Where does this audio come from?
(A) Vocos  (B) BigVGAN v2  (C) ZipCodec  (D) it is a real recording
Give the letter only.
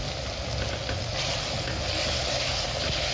D